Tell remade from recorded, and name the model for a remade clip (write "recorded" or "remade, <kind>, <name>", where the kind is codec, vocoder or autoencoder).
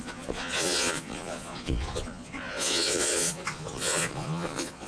remade, vocoder, Vocos